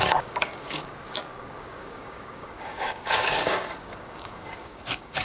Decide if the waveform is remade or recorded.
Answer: remade